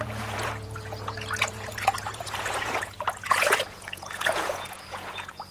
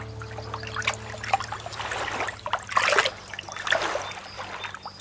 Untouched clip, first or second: second